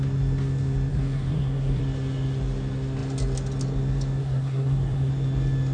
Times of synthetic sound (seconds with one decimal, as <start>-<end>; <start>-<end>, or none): 0.9-1.8; 4.2-5.1